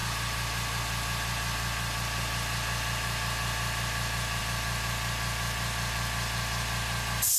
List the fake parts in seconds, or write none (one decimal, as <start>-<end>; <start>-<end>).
none